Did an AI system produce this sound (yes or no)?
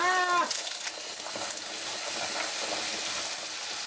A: no